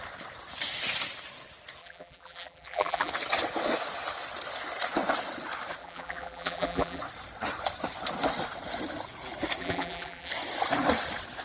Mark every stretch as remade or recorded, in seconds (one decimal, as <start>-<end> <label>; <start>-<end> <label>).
0.0-1.8 recorded; 1.8-3.1 remade; 3.1-5.8 recorded; 5.8-7.0 remade; 7.0-9.6 recorded; 9.6-10.3 remade; 10.3-11.4 recorded